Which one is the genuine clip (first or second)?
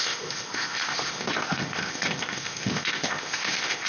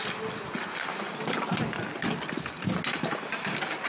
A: second